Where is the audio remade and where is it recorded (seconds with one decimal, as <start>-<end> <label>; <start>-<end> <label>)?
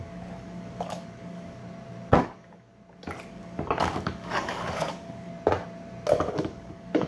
0.0-1.6 remade; 1.6-2.2 recorded; 2.2-2.7 remade; 2.7-3.3 recorded; 3.3-5.3 remade; 5.3-6.1 recorded; 6.1-7.1 remade